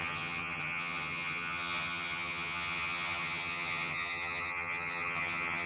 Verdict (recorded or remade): remade